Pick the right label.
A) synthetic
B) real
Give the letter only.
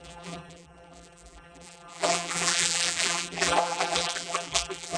A